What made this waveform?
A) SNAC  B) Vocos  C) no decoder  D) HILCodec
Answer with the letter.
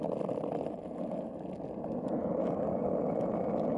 C